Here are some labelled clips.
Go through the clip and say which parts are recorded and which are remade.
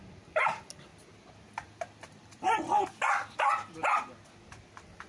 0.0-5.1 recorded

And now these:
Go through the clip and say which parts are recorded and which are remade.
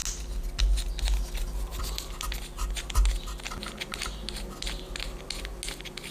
0.0-6.1 recorded